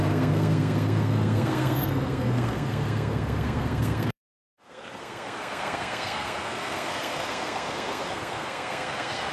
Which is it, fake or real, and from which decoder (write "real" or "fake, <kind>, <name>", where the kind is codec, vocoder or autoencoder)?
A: fake, codec, SNAC